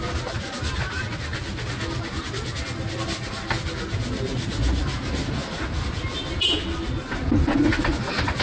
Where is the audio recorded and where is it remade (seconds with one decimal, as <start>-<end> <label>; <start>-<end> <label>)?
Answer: 0.0-8.4 recorded